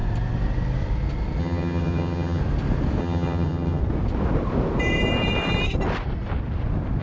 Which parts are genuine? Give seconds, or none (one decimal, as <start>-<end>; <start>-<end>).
0.0-1.4; 2.4-3.0; 3.8-7.0

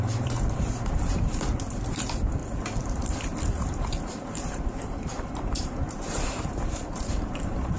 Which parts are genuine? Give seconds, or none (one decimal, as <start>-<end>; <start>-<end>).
2.4-3.6